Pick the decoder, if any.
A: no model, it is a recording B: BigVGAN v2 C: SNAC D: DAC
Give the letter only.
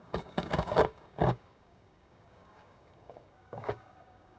D